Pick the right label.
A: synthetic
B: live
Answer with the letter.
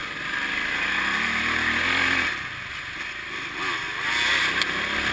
B